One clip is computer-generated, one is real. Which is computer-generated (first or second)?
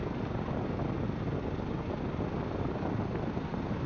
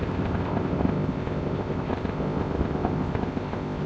second